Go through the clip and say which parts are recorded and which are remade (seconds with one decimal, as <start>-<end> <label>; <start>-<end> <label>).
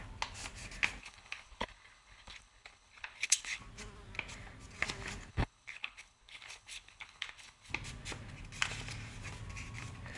0.0-1.0 recorded; 1.0-3.6 remade; 3.6-5.3 recorded; 5.3-7.7 remade; 7.7-10.2 recorded